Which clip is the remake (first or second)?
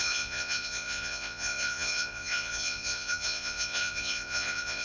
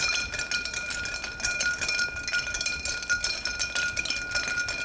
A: first